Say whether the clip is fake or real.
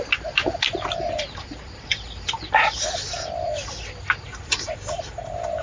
real